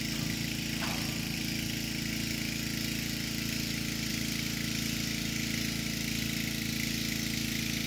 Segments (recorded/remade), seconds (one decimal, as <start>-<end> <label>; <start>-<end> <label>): 0.0-7.9 recorded